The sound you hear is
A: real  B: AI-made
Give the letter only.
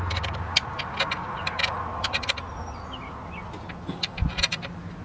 A